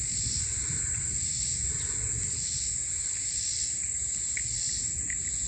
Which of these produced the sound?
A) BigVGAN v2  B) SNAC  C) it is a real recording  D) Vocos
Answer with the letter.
C